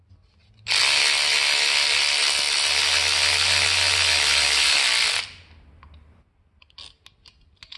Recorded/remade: recorded